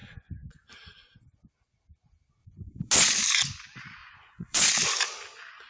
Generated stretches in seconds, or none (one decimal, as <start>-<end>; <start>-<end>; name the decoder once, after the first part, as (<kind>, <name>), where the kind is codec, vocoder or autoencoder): 0.0-0.7 (vocoder, Vocos); 2.4-2.9; 4.0-4.6